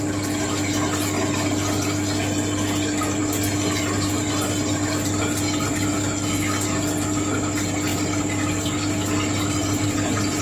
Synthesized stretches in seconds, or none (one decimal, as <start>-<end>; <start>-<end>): none